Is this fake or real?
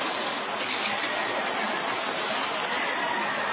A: real